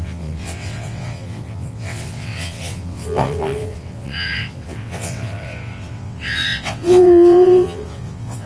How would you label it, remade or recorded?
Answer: remade